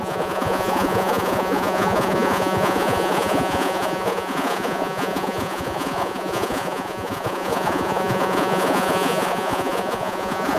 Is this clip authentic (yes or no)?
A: no